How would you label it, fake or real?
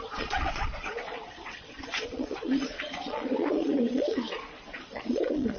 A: fake